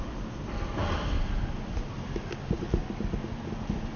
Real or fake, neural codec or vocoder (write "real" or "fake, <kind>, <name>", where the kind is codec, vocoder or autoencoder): real